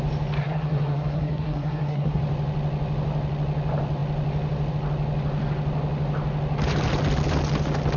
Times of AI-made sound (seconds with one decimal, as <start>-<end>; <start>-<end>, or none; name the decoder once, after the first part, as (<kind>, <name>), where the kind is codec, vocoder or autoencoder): 0.4-2.2 (codec, SNAC)